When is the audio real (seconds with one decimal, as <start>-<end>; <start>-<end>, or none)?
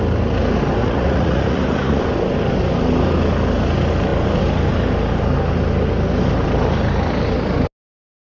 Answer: 0.0-0.8; 2.0-8.2